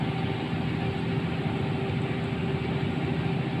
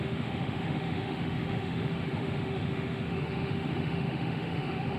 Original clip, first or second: first